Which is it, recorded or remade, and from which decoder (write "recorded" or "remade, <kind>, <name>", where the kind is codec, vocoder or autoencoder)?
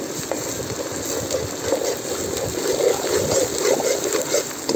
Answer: recorded